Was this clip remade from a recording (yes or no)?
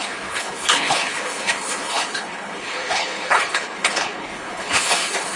yes